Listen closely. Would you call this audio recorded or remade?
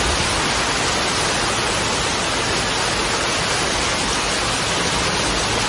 recorded